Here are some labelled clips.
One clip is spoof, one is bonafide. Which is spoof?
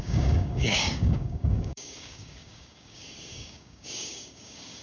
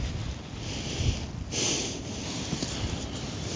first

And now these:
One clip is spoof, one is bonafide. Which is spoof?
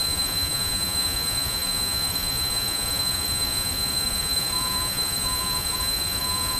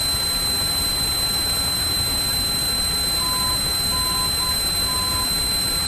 first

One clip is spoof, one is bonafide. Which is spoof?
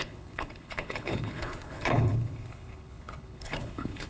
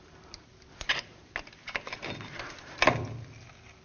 first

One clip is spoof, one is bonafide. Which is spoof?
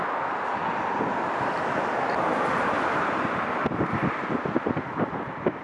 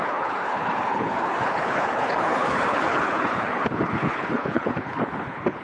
second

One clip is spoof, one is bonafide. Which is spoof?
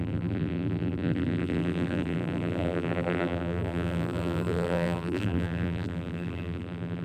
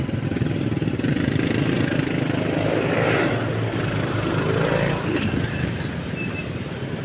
first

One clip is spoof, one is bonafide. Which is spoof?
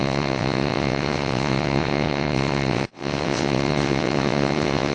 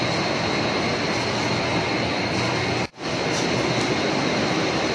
first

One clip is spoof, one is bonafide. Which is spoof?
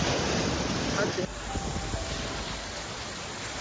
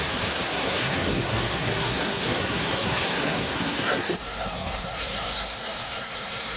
second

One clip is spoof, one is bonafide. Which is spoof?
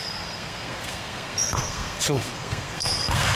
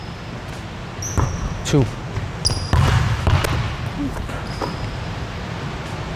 first